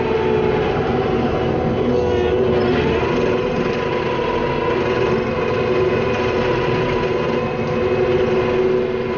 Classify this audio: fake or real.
real